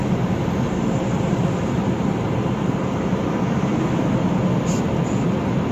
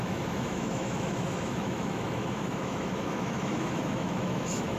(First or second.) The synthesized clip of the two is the second